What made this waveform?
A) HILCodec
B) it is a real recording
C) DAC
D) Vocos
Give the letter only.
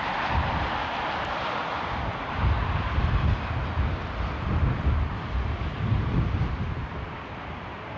B